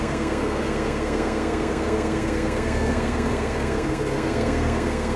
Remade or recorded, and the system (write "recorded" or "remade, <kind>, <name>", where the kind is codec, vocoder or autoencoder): remade, codec, SNAC